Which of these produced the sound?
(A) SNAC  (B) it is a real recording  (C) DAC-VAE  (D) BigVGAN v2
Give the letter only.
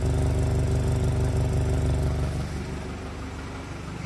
B